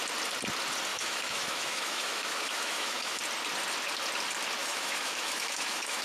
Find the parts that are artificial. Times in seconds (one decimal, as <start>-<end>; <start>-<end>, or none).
0.9-3.2; 4.6-6.0